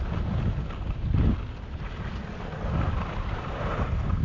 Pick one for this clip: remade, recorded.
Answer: recorded